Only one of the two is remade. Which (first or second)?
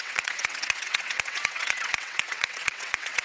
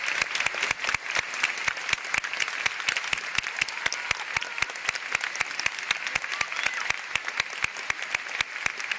first